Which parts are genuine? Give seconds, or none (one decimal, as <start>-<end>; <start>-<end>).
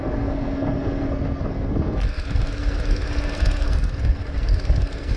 none